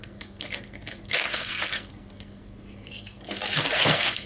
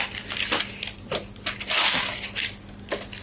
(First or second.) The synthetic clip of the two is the first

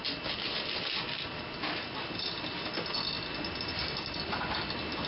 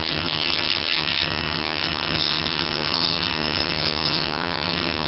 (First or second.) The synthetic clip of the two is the second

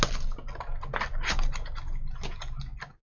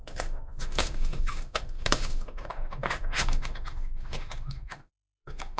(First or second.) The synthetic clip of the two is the second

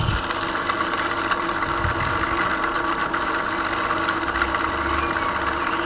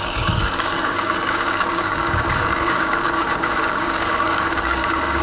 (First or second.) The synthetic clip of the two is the second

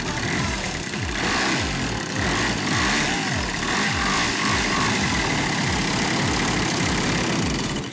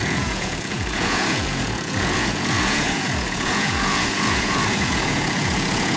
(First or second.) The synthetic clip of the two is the second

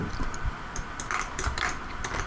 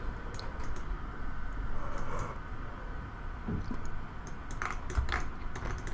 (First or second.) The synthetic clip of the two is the first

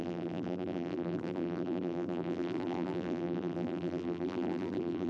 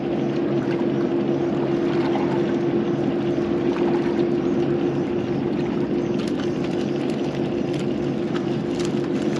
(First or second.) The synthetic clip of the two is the first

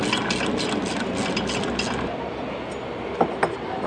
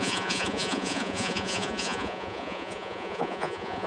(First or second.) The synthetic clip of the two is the second